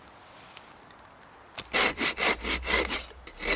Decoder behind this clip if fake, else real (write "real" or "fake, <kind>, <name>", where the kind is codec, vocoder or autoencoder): real